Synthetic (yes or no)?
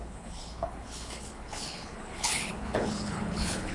yes